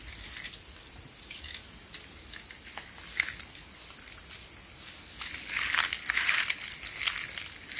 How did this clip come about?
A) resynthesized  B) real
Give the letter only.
B